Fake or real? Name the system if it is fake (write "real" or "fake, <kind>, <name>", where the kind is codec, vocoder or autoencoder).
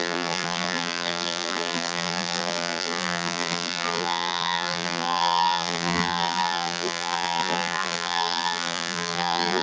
fake, vocoder, BigVGAN v2